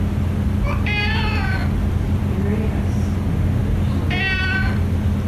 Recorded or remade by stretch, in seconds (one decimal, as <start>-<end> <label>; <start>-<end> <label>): 0.0-5.3 recorded